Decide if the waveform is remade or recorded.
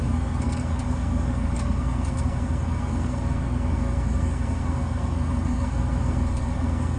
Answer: remade